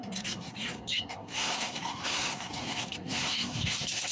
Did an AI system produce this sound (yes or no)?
yes